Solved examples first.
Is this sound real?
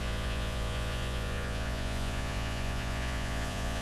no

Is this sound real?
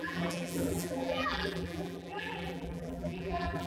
no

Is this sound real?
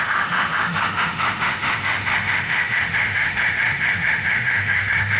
no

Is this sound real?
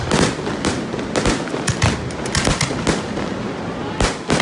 yes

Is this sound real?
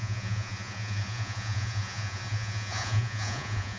no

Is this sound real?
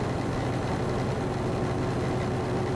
yes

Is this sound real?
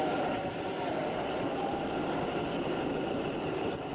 yes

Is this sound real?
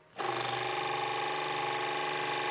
yes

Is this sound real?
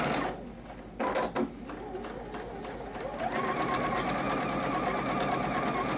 yes